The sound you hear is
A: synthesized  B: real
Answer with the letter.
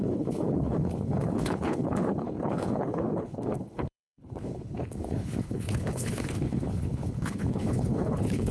A